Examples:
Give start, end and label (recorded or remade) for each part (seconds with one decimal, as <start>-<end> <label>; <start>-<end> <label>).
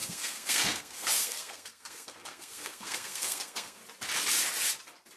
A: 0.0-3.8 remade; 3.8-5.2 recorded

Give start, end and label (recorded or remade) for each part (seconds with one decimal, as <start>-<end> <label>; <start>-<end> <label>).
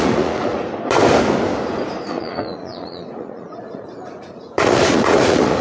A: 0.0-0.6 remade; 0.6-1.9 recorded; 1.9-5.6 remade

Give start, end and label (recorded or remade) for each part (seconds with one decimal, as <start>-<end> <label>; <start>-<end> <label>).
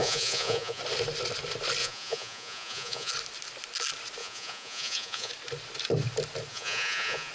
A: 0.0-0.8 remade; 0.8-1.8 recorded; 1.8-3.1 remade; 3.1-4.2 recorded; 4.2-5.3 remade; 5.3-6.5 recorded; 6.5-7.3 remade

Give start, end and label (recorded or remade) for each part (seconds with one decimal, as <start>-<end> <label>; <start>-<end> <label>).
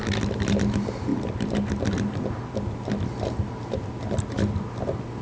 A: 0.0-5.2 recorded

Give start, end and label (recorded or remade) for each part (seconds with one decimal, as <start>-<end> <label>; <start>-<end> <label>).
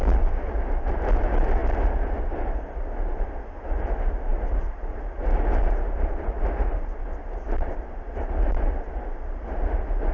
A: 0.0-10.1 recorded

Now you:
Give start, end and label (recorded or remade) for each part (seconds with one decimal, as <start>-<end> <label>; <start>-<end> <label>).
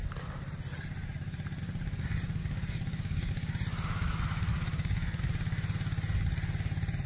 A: 0.0-2.4 recorded; 2.4-3.3 remade; 3.3-4.5 recorded; 4.5-5.2 remade; 5.2-7.1 recorded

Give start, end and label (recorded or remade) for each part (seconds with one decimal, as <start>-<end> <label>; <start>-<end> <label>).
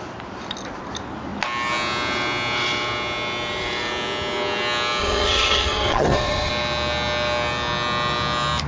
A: 0.0-5.0 recorded; 5.0-6.5 remade; 6.5-8.7 recorded